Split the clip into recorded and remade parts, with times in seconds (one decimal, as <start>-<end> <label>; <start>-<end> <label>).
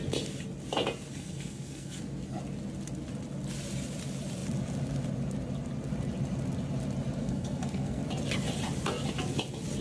0.0-1.1 recorded; 1.1-2.4 remade; 2.4-7.2 recorded; 7.2-8.0 remade; 8.0-9.8 recorded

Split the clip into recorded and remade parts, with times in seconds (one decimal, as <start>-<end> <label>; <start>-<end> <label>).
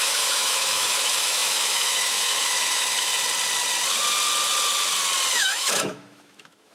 0.0-3.1 remade; 3.1-5.3 recorded; 5.3-6.7 remade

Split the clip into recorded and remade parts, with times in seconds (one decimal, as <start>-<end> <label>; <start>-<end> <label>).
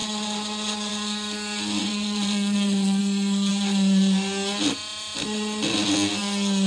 0.0-1.8 recorded; 1.8-3.0 remade; 3.0-6.7 recorded